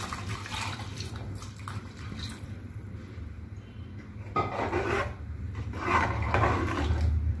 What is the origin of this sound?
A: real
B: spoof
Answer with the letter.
A